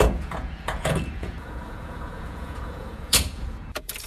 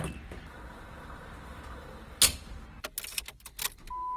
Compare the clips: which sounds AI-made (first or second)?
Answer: first